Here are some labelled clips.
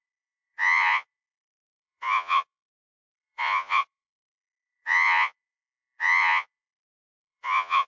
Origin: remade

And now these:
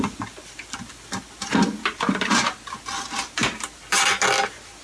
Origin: recorded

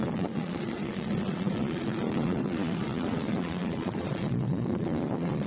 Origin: remade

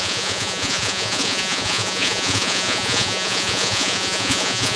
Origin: remade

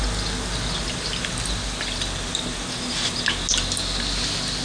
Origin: recorded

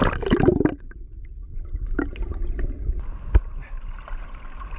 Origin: recorded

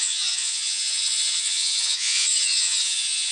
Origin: remade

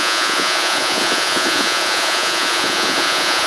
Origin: remade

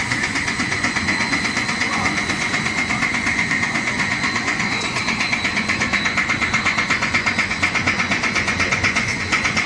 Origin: remade